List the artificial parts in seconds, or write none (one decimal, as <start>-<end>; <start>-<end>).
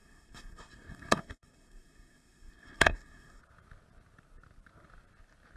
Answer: 0.0-3.4